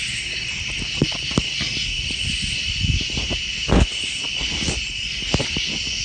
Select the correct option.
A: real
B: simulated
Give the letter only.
A